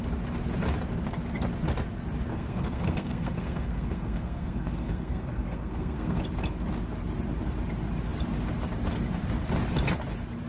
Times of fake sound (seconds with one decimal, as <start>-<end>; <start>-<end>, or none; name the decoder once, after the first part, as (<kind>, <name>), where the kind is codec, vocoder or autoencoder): 2.3-6.2 (codec, SNAC)